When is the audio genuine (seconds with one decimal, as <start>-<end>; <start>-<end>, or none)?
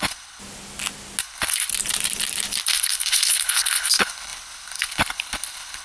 0.4-1.2; 1.7-2.6